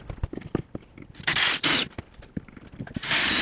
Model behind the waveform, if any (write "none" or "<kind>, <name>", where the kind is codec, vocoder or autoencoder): none